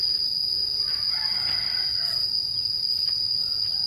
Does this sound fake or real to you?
real